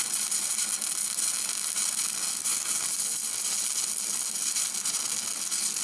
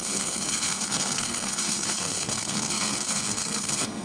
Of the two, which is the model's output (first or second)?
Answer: second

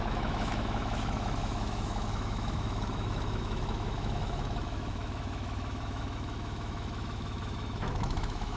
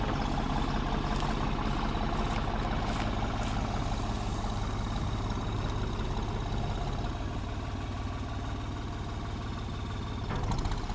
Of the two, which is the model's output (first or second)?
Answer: first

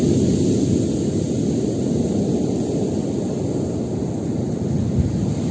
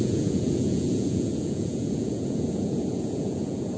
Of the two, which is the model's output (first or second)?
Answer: second